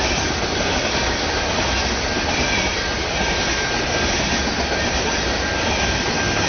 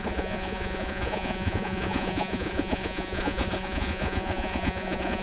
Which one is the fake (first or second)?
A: second